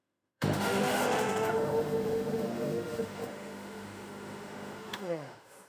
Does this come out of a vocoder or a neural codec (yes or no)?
yes